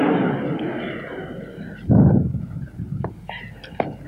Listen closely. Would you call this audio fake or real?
real